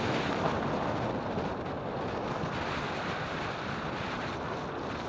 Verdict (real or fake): real